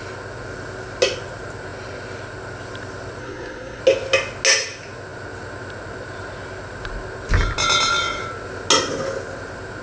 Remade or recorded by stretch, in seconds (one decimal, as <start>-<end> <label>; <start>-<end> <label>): 0.0-3.2 recorded; 3.2-3.8 remade; 3.8-9.8 recorded